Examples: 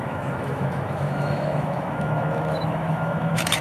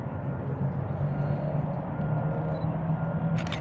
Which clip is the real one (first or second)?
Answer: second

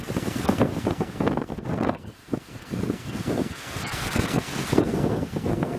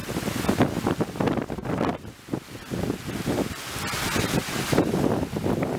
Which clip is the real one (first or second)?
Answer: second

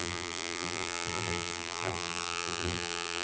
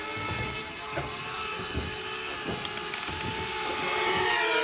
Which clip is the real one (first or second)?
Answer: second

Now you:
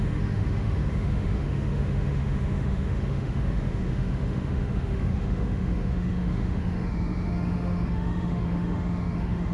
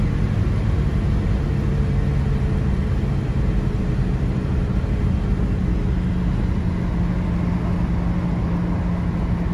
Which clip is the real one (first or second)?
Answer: second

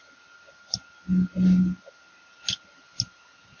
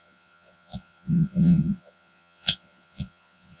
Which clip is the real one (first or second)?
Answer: first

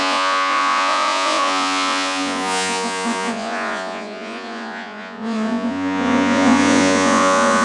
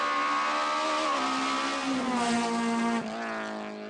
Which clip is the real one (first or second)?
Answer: second